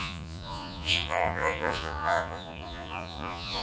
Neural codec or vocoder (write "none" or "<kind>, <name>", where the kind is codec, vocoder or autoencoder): vocoder, Vocos